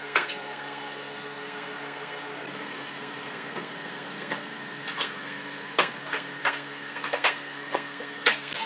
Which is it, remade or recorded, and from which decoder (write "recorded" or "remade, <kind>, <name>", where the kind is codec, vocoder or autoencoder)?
remade, codec, SNAC